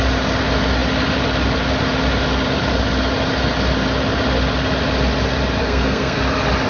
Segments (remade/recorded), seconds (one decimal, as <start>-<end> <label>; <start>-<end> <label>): 0.0-5.6 recorded; 5.6-6.2 remade; 6.2-6.7 recorded